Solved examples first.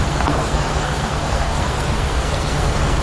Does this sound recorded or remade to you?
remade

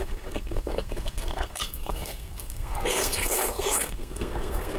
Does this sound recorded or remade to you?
remade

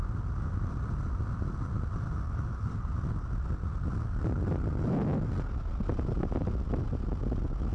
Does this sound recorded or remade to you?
recorded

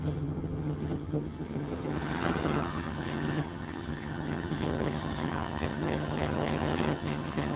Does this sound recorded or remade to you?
remade